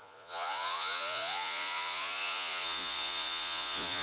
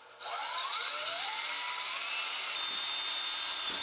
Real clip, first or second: second